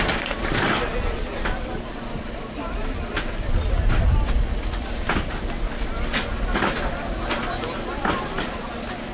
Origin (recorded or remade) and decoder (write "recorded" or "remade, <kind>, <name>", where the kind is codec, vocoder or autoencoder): recorded